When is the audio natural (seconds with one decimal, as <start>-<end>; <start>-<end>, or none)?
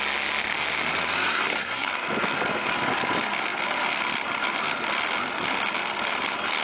0.0-1.3; 1.9-6.6